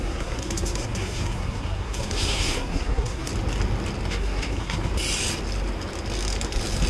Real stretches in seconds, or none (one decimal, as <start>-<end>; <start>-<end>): 3.3-4.1; 4.9-6.9